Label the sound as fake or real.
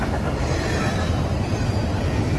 real